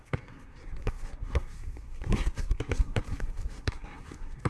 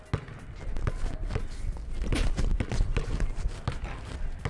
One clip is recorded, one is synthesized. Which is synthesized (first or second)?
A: first